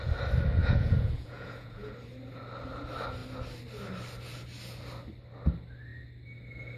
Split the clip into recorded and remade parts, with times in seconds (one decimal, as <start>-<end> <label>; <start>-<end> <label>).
0.0-0.6 recorded; 0.6-1.9 remade; 1.9-6.8 recorded